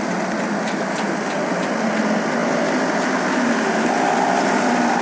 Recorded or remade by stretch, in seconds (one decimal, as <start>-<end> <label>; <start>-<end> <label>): 0.0-5.0 recorded